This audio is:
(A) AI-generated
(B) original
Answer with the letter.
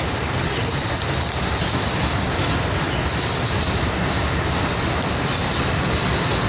B